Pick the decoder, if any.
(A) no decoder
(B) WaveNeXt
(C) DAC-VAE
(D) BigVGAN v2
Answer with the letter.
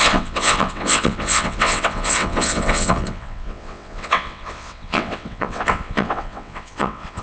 B